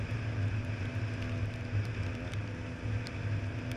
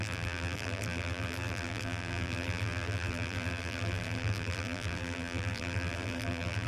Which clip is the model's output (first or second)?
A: second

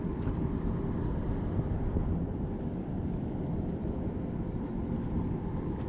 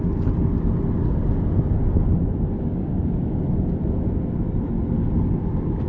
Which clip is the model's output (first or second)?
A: first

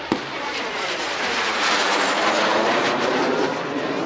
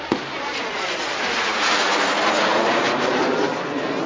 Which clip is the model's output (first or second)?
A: first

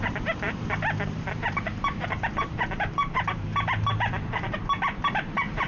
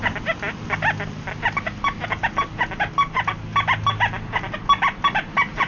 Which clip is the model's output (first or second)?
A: first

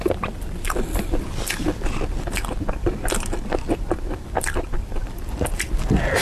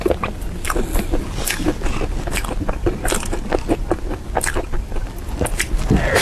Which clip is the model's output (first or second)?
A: first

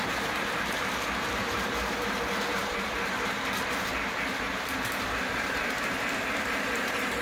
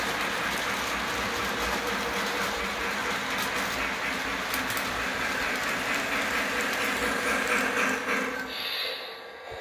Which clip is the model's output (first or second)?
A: first